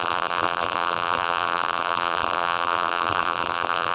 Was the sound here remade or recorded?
remade